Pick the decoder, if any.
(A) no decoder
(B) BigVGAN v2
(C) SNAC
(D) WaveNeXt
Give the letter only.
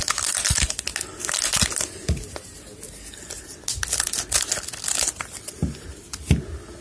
A